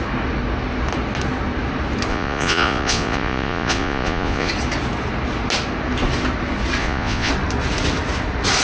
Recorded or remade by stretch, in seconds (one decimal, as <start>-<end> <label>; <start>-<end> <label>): 0.0-2.1 recorded; 2.1-4.5 remade; 4.5-6.8 recorded; 6.8-7.3 remade; 7.3-8.6 recorded